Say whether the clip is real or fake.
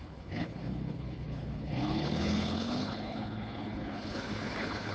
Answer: fake